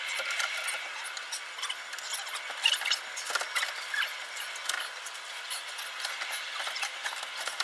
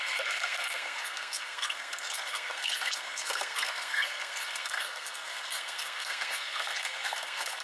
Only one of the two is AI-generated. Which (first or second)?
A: second